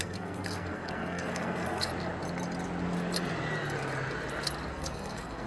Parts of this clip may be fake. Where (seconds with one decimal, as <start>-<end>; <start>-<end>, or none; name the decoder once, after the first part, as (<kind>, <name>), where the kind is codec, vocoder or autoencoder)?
0.0-1.9 (codec, SNAC); 4.7-5.5